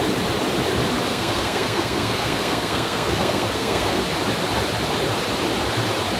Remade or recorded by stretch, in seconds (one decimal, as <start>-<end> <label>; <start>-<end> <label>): 0.0-1.1 recorded; 1.1-4.0 remade; 4.0-6.2 recorded

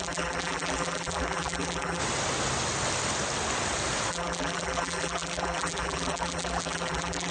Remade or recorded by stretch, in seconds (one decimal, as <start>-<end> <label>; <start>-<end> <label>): 0.0-2.0 remade; 2.0-4.1 recorded; 4.1-7.3 remade

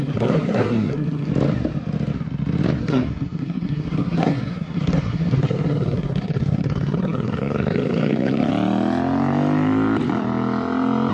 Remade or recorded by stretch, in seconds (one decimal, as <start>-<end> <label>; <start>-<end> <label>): 0.0-1.3 remade; 1.3-2.8 recorded; 2.8-8.5 remade; 8.5-11.1 recorded

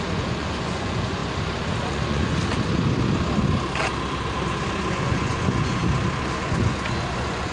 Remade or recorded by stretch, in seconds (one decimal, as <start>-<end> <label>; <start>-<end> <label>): 0.0-1.2 remade; 1.2-1.8 recorded; 1.8-2.4 remade; 2.4-4.9 recorded; 4.9-5.8 remade; 5.8-6.4 recorded; 6.4-7.5 remade

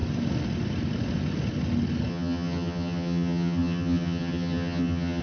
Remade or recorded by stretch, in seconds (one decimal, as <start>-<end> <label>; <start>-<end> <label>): 0.0-2.1 recorded; 2.1-5.2 remade

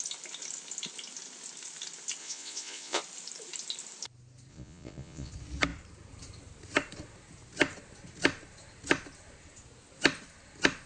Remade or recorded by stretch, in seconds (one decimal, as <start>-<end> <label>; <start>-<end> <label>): 0.0-2.2 recorded; 2.2-3.0 remade; 3.0-4.5 recorded; 4.5-5.3 remade; 5.3-10.9 recorded

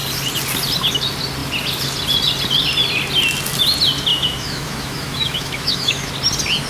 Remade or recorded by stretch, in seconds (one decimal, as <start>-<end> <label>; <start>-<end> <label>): 0.0-4.1 recorded; 4.1-6.1 remade; 6.1-6.7 recorded

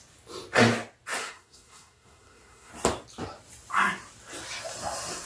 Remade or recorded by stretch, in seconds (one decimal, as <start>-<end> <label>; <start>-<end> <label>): 0.0-1.2 recorded; 1.2-2.7 remade; 2.7-5.3 recorded